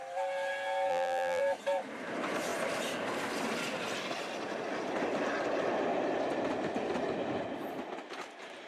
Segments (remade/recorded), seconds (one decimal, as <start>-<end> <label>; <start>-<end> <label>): 0.0-0.9 recorded; 0.9-1.4 remade; 1.4-8.7 recorded